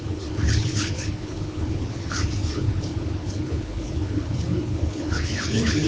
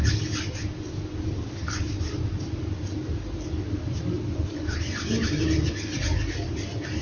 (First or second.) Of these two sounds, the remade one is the first